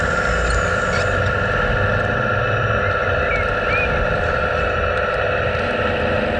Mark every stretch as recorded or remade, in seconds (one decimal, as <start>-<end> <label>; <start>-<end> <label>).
0.0-6.4 recorded